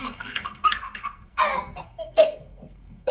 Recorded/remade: remade